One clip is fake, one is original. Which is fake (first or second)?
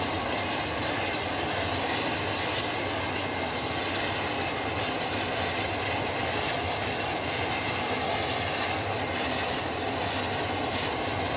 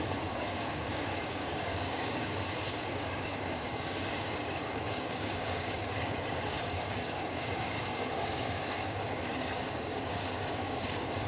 second